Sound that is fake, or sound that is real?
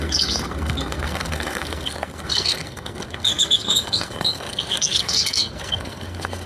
fake